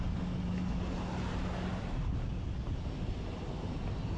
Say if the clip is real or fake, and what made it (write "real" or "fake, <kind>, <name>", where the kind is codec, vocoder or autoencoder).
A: real